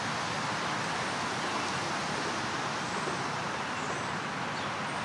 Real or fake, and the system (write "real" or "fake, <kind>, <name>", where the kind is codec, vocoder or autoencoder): real